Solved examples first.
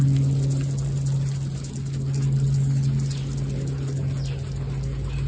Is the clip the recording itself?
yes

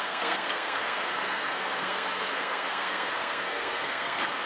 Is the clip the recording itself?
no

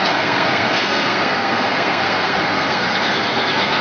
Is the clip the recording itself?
no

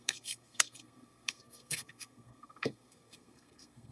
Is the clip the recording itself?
no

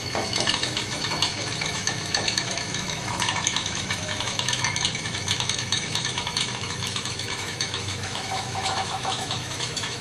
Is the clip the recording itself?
no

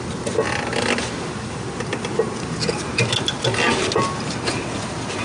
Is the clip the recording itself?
yes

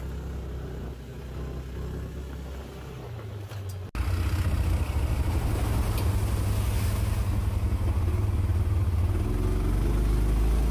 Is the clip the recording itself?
yes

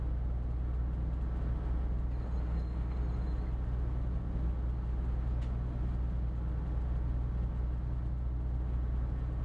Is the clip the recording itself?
yes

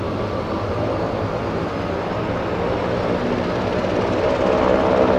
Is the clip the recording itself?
yes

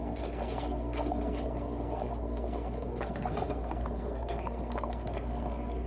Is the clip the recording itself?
no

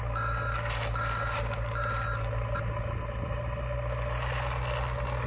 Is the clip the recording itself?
yes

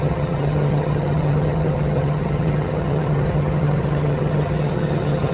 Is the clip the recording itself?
no